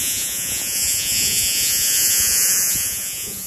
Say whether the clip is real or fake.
fake